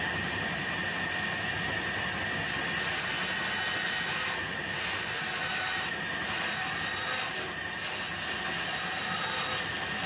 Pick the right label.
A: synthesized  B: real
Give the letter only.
B